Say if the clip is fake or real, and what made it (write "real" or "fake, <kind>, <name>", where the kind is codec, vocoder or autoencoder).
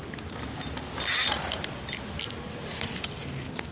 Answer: real